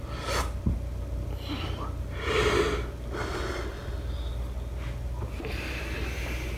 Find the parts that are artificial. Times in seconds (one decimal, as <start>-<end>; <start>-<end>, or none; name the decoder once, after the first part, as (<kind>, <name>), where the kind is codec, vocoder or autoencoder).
5.2-6.6 (vocoder, BigVGAN v2)